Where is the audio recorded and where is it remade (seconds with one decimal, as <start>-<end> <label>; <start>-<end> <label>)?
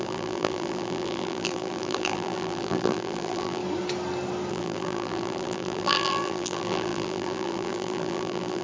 0.0-3.6 remade; 3.6-4.5 recorded; 4.5-8.6 remade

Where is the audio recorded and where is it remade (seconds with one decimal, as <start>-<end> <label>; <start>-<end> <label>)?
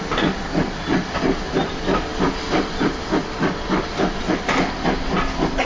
0.0-5.7 recorded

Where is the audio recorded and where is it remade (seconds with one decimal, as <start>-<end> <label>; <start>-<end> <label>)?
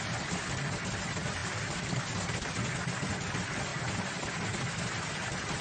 0.0-1.4 recorded; 1.4-2.0 remade; 2.0-5.6 recorded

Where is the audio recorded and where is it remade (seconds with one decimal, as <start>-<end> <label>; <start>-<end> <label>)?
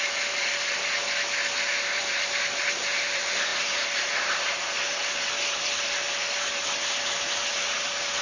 0.0-8.2 remade